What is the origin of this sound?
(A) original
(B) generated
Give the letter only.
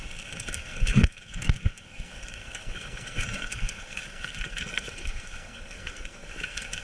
B